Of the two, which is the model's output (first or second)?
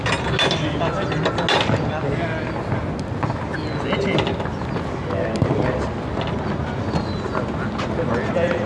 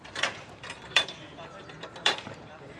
second